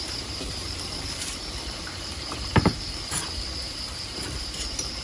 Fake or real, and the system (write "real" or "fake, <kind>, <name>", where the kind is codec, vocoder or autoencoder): fake, vocoder, BigVGAN v2